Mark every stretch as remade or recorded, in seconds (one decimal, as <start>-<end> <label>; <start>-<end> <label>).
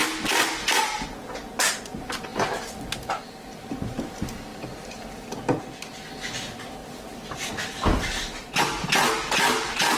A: 0.0-6.8 recorded; 6.8-7.5 remade; 7.5-10.0 recorded